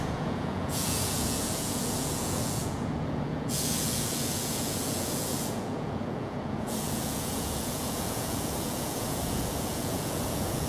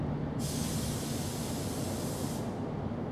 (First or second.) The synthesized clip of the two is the first